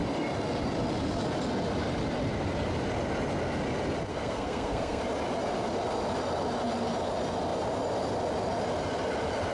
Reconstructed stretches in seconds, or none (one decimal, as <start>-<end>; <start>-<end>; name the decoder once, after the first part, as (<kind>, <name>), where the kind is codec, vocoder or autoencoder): 4.1-5.0 (codec, SNAC)